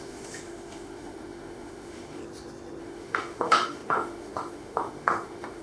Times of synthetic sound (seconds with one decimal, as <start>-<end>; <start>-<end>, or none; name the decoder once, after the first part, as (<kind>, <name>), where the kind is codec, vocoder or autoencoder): 0.0-2.2 (autoencoder, DAC-VAE); 2.8-5.6